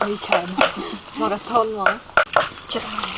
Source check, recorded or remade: recorded